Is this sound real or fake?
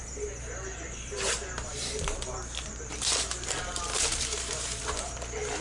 fake